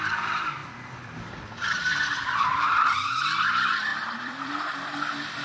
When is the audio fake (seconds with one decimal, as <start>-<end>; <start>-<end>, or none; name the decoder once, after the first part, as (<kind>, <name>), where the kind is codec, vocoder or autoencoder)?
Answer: 0.6-2.7 (vocoder, BigVGAN v2); 3.9-4.5